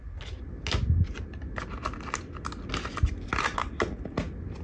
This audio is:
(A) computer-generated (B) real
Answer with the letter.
B